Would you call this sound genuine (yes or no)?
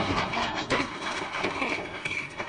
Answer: no